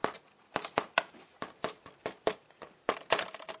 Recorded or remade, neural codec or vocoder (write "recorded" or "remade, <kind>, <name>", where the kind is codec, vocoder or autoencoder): recorded